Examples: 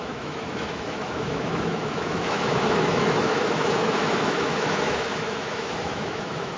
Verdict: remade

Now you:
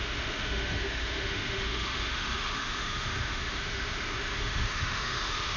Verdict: remade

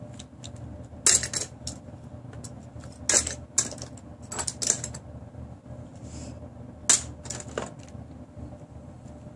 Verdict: recorded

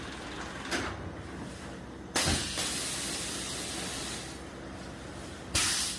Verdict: recorded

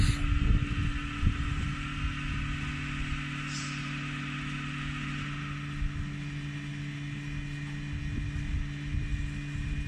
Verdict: recorded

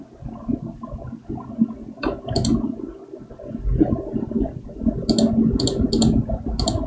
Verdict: recorded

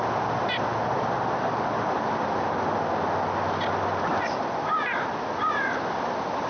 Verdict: recorded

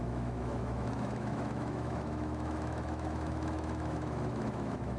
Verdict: remade